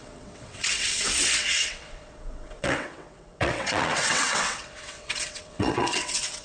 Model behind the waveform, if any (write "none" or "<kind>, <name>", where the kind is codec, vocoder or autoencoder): vocoder, WaveNeXt